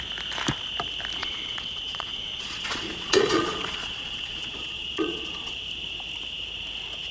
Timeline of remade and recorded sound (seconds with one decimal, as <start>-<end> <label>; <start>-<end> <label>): 0.0-1.2 recorded; 1.2-5.5 remade; 5.5-7.1 recorded